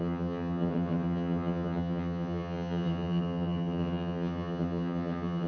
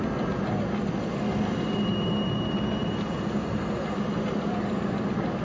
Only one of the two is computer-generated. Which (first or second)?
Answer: first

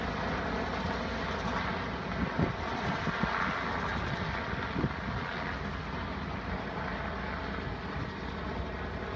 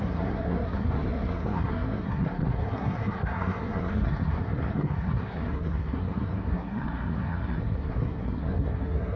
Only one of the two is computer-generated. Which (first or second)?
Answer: second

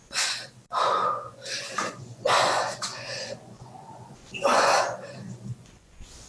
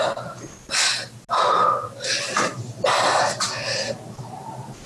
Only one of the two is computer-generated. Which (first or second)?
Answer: first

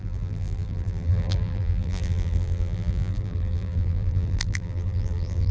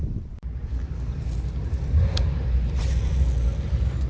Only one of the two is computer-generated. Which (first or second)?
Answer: first